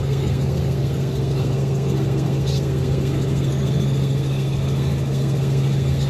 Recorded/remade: remade